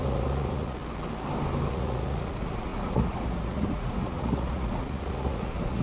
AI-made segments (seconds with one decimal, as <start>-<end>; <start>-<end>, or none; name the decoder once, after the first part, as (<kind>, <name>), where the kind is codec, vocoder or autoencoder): 0.0-0.8 (vocoder, Vocos); 1.7-5.8